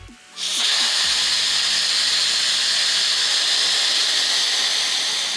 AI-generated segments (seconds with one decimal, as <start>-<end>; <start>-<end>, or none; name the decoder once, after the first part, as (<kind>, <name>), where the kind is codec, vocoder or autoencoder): 4.7-5.4 (vocoder, BigVGAN v2)